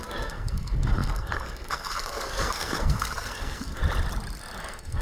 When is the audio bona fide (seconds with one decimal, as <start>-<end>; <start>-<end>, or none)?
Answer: 3.8-4.6